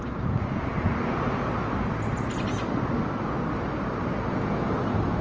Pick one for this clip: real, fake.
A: real